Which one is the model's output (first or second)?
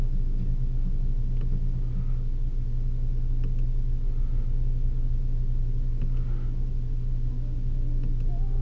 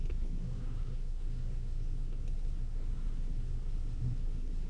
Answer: second